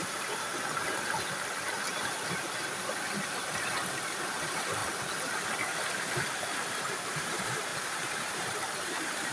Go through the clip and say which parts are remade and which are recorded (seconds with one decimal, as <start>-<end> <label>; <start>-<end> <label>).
0.0-0.5 remade; 0.5-1.9 recorded; 1.9-4.8 remade; 4.8-6.0 recorded; 6.0-9.3 remade